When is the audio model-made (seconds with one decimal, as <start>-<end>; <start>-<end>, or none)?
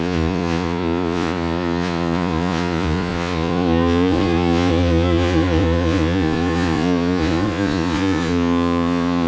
0.0-9.3